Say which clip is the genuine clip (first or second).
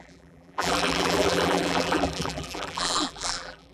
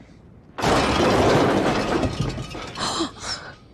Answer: second